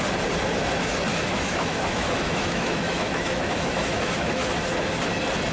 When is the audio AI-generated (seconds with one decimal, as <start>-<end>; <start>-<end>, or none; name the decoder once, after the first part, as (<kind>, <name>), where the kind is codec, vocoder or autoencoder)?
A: 1.1-4.4 (autoencoder, DAC-VAE)